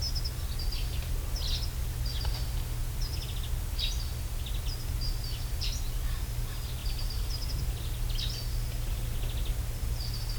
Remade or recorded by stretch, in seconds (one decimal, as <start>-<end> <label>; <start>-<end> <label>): 0.0-10.4 recorded